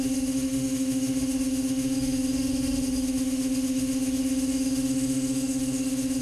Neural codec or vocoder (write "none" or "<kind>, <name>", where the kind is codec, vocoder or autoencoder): autoencoder, DAC-VAE